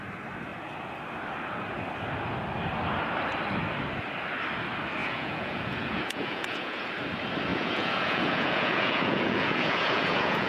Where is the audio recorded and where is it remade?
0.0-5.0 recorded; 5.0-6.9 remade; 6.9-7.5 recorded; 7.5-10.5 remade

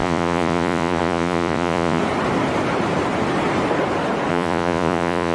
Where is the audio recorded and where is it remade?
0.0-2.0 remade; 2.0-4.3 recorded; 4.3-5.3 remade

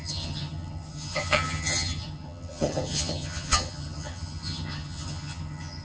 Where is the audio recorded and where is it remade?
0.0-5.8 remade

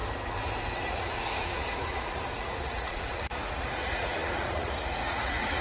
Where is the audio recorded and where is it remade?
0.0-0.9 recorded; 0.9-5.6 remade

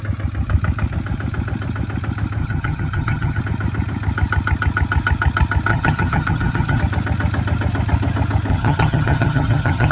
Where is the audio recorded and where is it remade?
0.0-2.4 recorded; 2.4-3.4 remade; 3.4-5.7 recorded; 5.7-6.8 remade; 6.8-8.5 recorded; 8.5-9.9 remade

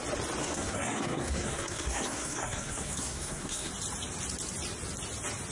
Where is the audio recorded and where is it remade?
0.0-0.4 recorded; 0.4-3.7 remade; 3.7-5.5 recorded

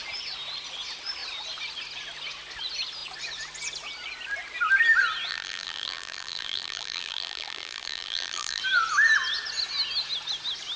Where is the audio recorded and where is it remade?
0.0-5.3 recorded; 5.3-8.6 remade; 8.6-10.8 recorded